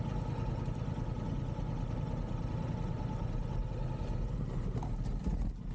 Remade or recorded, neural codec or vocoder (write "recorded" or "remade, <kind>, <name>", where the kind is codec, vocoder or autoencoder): recorded